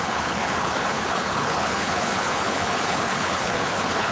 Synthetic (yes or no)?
yes